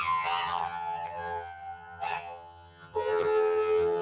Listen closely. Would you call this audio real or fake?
fake